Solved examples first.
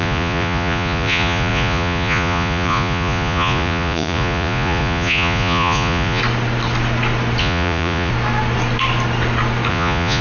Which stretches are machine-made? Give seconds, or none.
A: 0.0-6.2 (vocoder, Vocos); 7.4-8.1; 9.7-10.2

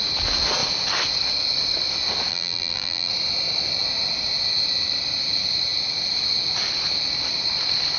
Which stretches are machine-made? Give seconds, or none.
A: 2.3-3.1 (vocoder, BigVGAN v2)

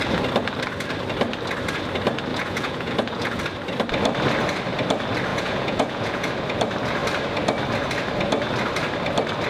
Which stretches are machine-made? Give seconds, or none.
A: 2.3-3.4 (vocoder, Vocos); 5.3-6.3

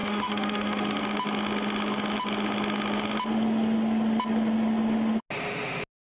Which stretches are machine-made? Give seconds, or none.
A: 0.0-1.0 (autoencoder, DAC-VAE)